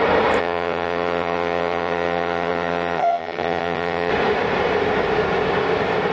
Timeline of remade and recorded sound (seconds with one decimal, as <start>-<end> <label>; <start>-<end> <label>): 0.0-0.4 recorded; 0.4-4.1 remade; 4.1-6.1 recorded